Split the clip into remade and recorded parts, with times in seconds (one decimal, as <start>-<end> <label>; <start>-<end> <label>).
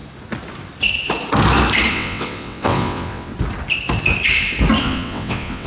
0.0-1.9 recorded; 1.9-3.3 remade; 3.3-4.8 recorded; 4.8-5.7 remade